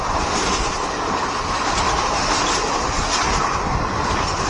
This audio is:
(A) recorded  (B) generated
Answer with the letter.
A